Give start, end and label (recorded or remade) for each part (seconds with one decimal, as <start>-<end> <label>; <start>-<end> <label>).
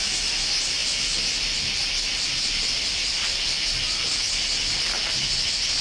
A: 0.0-5.8 recorded